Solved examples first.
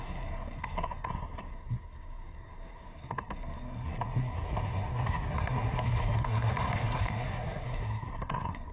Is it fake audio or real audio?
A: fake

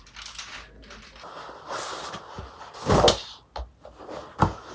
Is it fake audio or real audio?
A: real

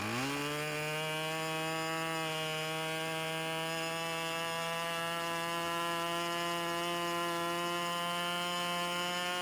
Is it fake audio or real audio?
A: real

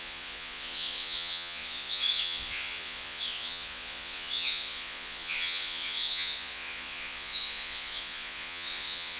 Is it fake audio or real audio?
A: fake